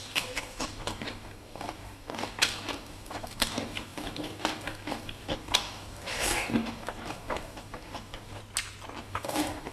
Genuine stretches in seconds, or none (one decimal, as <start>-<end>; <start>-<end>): 8.4-9.0